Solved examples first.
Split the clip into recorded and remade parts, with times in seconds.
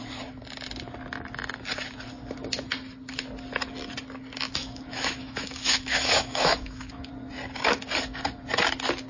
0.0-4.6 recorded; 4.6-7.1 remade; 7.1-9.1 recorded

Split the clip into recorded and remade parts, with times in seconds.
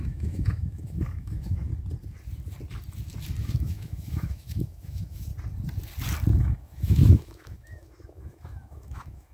0.0-1.7 remade; 1.7-3.4 recorded; 3.4-5.3 remade; 5.3-6.4 recorded; 6.4-9.3 remade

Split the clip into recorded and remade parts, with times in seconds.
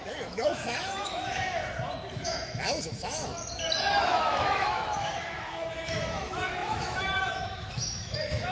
0.0-1.6 remade; 1.6-2.1 recorded; 2.1-3.3 remade; 3.3-4.0 recorded; 4.0-8.5 remade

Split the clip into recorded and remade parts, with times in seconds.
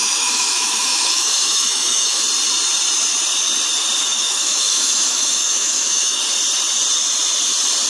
0.0-2.2 remade; 2.2-4.1 recorded; 4.1-6.2 remade; 6.2-7.9 recorded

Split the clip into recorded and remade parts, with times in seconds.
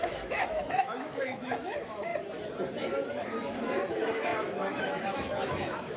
0.0-2.1 remade; 2.1-3.1 recorded; 3.1-6.0 remade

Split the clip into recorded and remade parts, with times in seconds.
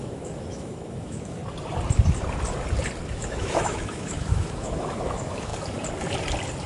0.0-1.4 remade; 1.4-3.1 recorded; 3.1-5.5 remade; 5.5-6.7 recorded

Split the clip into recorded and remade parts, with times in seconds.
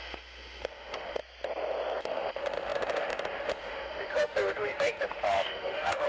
0.0-1.2 remade; 1.2-2.0 recorded; 2.0-6.1 remade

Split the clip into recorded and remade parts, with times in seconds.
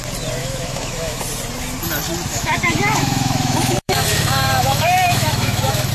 0.0-0.4 recorded; 0.4-1.2 remade; 1.2-2.3 recorded; 2.3-5.9 remade